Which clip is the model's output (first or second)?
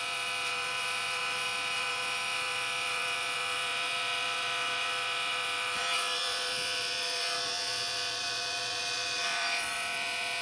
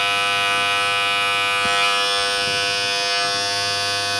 first